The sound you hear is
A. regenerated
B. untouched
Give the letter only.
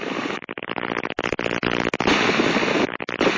B